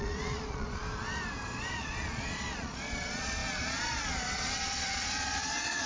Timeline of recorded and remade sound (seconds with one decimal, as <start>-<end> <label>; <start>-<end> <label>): 0.0-0.8 remade; 0.8-1.7 recorded; 1.7-5.9 remade